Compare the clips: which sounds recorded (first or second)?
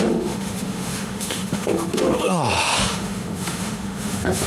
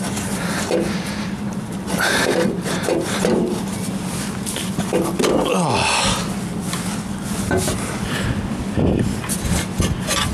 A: second